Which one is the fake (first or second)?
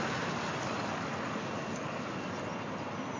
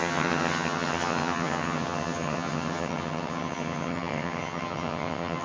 second